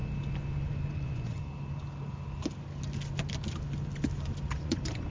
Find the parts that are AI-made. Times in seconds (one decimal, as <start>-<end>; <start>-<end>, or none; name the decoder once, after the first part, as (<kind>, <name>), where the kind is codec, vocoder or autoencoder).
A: 0.9-1.4 (vocoder, Vocos); 4.5-5.1